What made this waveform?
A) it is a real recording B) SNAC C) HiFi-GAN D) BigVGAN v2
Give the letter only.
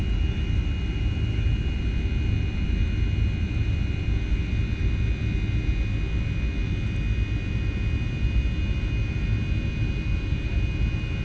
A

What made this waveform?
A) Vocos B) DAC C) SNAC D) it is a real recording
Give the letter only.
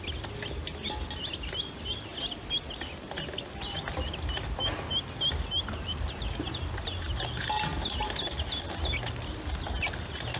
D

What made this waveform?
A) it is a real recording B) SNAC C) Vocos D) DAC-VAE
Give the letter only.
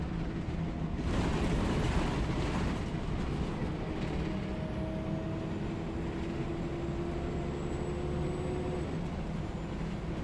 A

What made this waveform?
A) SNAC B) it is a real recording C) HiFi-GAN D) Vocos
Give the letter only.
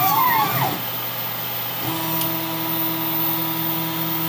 B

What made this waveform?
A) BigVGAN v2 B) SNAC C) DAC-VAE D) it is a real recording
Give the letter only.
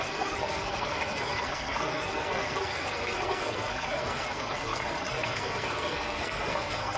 B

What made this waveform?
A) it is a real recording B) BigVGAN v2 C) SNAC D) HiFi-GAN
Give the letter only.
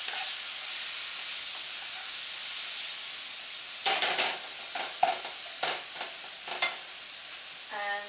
A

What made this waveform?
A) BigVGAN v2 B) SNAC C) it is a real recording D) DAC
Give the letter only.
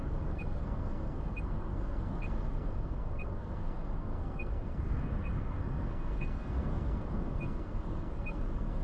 B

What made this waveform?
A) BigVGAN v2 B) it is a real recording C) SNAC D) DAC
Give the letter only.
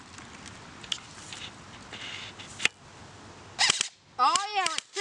B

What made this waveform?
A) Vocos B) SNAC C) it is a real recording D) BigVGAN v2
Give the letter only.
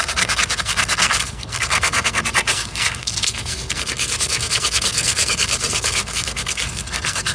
B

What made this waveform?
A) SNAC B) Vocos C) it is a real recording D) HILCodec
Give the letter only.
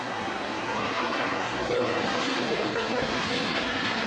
A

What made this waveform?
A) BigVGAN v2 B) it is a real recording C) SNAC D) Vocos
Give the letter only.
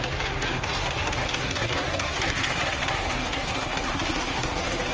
C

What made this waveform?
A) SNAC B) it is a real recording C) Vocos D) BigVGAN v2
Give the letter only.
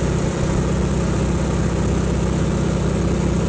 B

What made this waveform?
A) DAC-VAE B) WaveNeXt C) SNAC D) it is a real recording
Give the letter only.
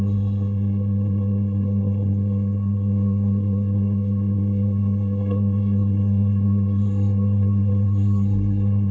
C